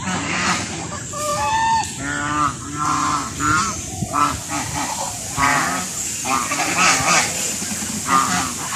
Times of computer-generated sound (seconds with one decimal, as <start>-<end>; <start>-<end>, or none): none